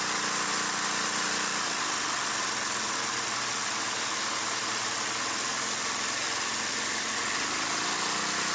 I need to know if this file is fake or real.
real